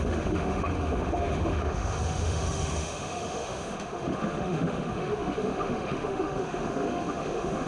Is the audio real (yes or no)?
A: no